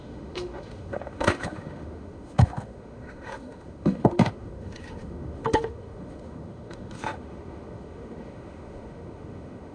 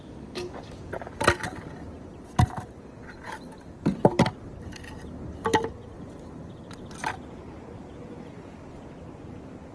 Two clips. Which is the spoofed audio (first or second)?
first